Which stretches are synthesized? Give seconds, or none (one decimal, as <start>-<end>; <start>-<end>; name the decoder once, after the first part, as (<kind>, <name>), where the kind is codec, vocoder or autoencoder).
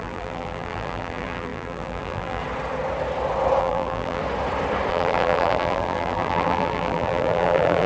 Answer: 0.0-2.4 (vocoder, BigVGAN v2); 3.6-4.2; 4.9-7.9